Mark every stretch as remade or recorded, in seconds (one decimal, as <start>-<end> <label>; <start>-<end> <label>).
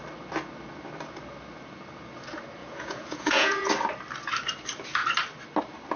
0.0-2.6 recorded; 2.6-3.7 remade; 3.7-6.0 recorded